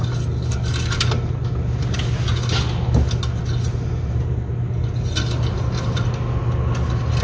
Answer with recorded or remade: recorded